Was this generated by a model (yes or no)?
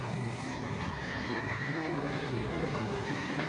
yes